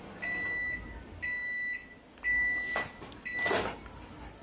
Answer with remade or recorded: recorded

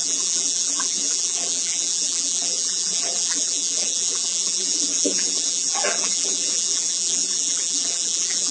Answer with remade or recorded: remade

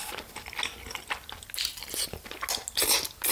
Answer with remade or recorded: recorded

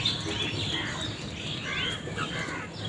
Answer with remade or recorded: recorded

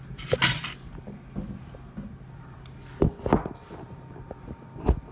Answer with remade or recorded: recorded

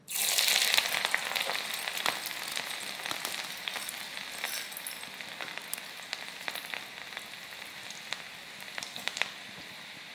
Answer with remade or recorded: recorded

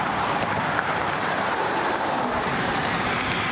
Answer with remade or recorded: remade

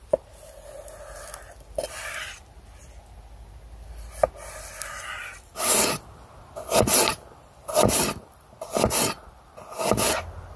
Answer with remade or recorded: recorded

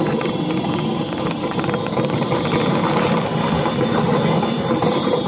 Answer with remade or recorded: recorded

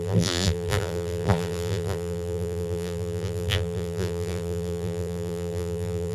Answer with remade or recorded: remade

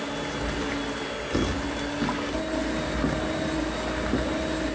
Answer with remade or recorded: recorded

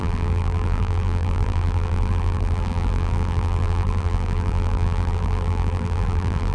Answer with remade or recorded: remade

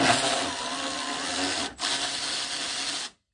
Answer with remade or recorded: recorded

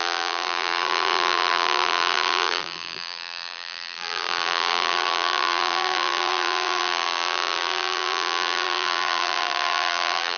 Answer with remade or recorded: remade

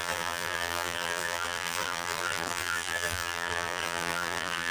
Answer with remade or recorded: remade